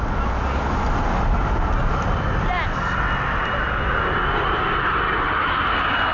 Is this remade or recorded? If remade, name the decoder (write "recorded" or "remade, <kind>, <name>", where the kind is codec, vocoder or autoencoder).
recorded